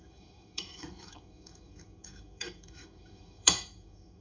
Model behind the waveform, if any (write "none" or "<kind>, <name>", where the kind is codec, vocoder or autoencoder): autoencoder, DAC-VAE